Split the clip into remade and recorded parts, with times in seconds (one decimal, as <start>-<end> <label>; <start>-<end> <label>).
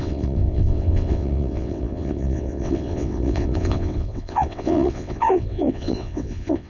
0.0-6.7 remade